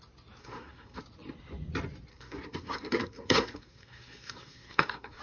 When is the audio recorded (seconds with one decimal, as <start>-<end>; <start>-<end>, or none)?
0.0-0.4; 1.0-2.1